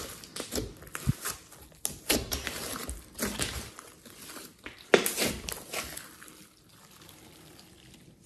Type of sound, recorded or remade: recorded